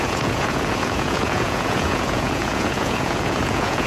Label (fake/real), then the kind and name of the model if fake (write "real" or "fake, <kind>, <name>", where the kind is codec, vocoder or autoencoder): fake, vocoder, Vocos